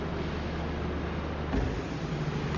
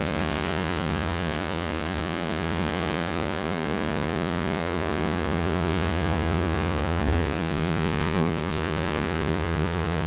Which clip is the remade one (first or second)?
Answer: second